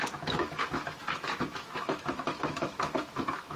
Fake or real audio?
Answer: fake